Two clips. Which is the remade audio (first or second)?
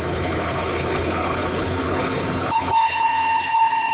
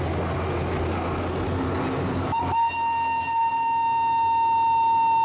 first